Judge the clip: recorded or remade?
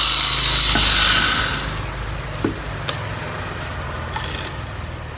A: recorded